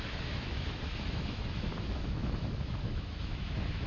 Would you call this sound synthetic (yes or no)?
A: yes